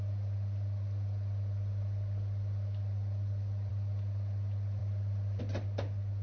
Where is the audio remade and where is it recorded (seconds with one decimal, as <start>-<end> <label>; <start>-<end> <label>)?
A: 0.0-6.2 recorded